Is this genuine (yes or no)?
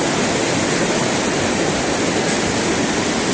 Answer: yes